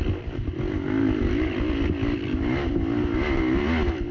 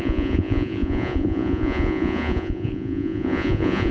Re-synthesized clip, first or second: second